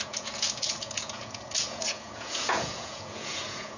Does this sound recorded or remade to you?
remade